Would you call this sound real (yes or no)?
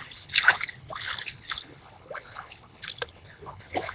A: no